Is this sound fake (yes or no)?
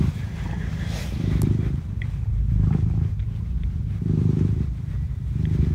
yes